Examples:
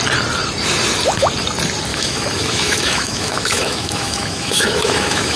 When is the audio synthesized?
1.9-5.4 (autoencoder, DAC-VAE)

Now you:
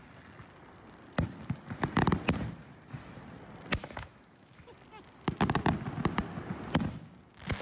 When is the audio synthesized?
3.8-4.7 (autoencoder, DAC-VAE)

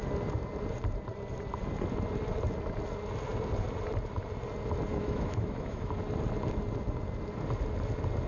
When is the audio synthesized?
4.9-5.9 (autoencoder, DAC-VAE)

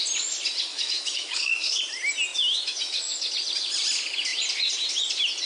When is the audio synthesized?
0.7-1.8 (autoencoder, DAC-VAE); 2.3-3.3

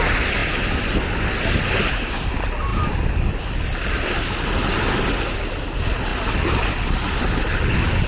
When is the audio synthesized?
none

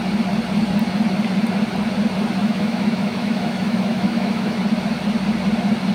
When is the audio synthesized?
2.4-4.6 (autoencoder, DAC-VAE)

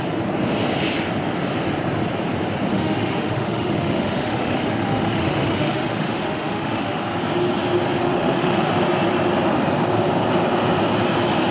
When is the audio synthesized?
2.7-7.0 (autoencoder, DAC-VAE); 8.0-8.7

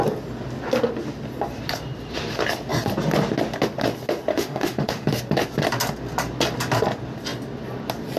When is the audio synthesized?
4.3-5.2 (autoencoder, DAC-VAE)